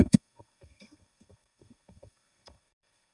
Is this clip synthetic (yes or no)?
yes